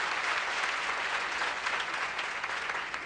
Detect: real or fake fake